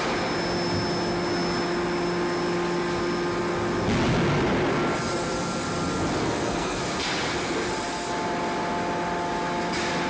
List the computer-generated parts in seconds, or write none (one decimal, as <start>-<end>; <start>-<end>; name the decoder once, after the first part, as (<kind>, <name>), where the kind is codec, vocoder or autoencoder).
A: 6.2-6.8 (codec, SNAC)